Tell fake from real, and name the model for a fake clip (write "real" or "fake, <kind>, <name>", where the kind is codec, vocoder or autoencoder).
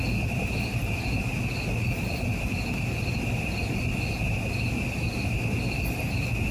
real